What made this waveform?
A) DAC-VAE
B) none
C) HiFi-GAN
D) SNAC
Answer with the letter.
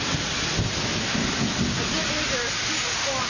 B